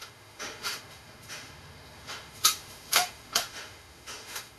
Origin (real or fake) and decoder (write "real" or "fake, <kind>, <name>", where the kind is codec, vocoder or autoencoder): fake, autoencoder, DAC-VAE